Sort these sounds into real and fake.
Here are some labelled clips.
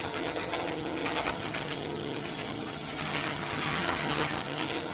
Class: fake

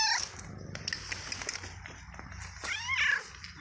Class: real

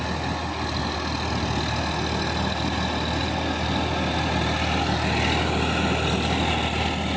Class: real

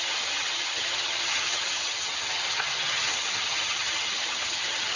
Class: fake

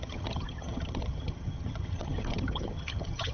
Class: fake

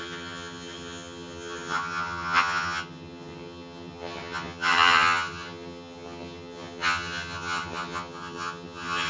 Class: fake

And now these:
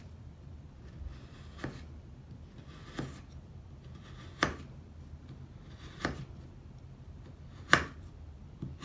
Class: real